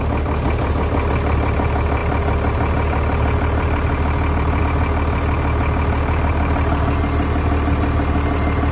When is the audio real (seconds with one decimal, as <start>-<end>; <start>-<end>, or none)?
0.0-8.7